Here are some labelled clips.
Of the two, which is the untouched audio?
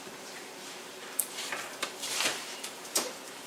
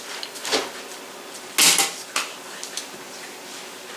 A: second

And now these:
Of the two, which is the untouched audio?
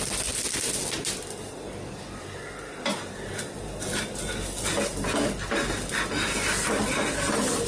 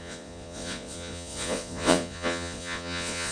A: first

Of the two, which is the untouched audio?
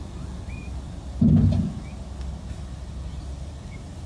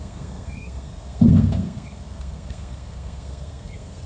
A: first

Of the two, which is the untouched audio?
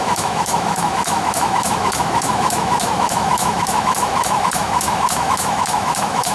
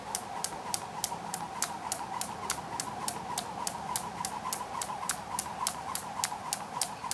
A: second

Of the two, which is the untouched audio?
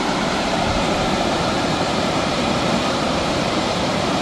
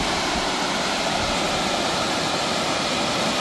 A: second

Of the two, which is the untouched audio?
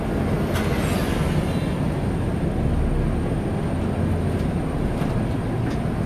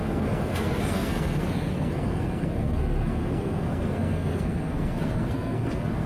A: first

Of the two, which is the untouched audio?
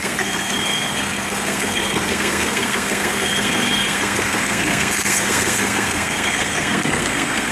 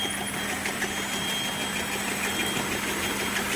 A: second